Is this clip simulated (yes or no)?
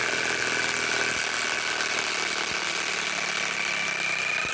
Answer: no